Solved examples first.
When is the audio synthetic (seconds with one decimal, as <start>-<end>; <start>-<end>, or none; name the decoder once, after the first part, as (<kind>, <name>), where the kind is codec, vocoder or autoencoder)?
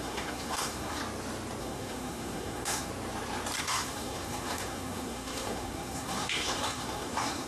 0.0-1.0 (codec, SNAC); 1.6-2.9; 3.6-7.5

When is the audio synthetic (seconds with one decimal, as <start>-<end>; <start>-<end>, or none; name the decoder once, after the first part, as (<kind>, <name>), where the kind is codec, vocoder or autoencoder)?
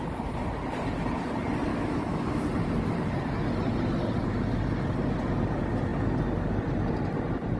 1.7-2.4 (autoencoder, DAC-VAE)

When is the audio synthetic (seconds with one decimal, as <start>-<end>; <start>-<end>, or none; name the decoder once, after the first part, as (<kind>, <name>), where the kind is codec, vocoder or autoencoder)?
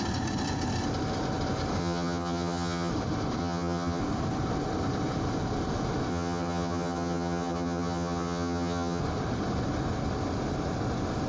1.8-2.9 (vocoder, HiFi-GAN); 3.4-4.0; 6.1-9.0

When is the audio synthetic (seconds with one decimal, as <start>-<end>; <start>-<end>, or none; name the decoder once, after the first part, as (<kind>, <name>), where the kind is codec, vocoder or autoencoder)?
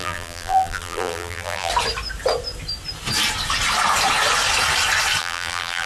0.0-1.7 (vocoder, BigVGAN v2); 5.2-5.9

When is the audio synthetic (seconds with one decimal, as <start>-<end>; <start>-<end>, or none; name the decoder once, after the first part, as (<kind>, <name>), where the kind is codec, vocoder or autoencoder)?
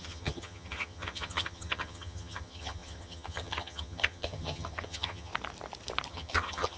0.0-5.3 (vocoder, HiFi-GAN); 6.1-6.8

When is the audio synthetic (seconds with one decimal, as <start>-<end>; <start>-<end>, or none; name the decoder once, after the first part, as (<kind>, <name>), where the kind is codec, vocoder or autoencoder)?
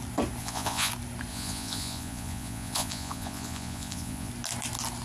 0.4-0.9 (vocoder, Vocos); 1.3-4.3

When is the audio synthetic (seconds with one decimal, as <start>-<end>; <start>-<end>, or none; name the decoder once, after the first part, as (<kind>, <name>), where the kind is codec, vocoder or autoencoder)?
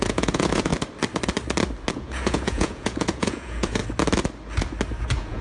0.0-0.7 (vocoder, Vocos); 1.9-3.8; 5.0-5.4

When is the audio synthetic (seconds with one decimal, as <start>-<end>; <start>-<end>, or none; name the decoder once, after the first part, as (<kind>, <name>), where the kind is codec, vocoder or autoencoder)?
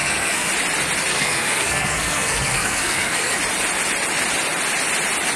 0.0-0.5 (codec, SNAC); 1.1-3.4